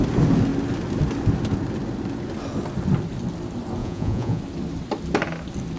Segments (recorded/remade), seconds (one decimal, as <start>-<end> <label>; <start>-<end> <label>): 0.0-3.8 recorded; 3.8-4.4 remade; 4.4-5.8 recorded